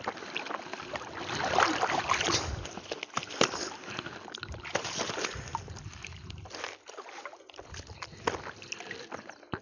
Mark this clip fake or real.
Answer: real